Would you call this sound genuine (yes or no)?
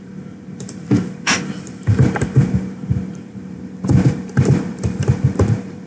no